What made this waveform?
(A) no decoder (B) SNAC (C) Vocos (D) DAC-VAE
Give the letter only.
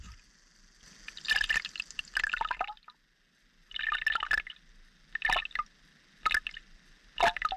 A